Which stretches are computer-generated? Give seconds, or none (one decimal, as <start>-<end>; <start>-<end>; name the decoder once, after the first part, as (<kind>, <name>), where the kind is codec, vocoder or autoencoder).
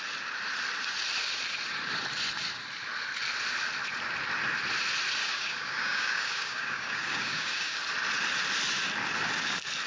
5.2-7.8 (codec, DAC)